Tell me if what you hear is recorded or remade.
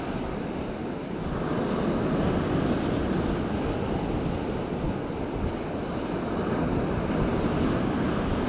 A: recorded